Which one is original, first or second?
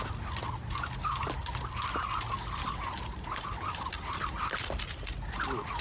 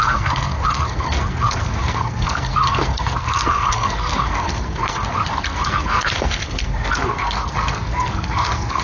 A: first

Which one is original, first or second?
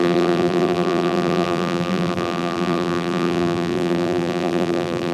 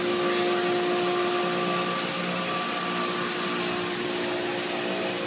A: second